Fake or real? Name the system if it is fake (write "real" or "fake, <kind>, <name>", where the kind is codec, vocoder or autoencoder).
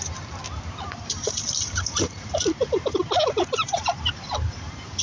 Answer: fake, vocoder, BigVGAN v2